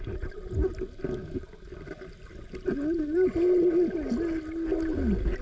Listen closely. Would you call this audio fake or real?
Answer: real